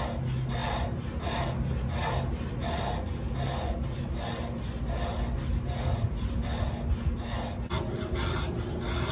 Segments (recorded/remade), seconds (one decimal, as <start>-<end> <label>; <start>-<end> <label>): 0.0-0.6 recorded; 0.6-1.1 remade; 1.1-9.1 recorded